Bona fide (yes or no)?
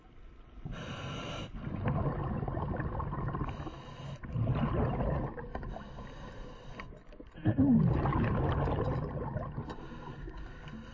yes